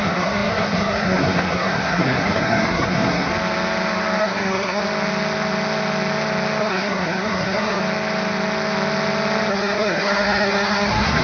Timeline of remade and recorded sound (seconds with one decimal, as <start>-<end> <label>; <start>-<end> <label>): 0.0-3.3 remade; 3.3-4.2 recorded; 4.2-4.8 remade; 4.8-6.6 recorded; 6.6-7.8 remade; 7.8-9.5 recorded; 9.5-11.2 remade

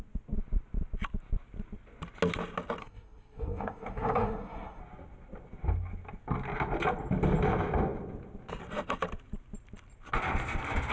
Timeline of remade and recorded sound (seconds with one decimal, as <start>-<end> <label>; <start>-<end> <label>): 0.0-2.8 recorded; 2.8-4.8 remade; 4.8-10.9 recorded

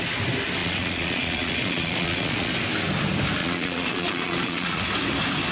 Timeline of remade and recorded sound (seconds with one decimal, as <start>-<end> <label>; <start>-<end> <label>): 0.0-0.6 recorded; 0.6-2.5 remade; 2.5-3.4 recorded; 3.4-4.8 remade; 4.8-5.5 recorded